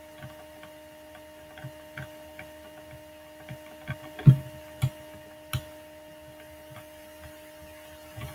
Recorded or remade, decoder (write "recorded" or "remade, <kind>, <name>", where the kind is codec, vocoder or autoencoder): recorded